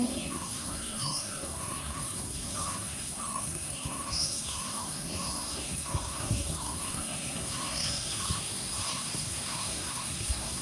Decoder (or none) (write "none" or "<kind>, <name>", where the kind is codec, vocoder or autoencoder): codec, SNAC